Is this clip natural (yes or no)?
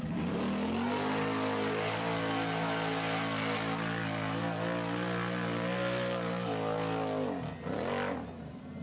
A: yes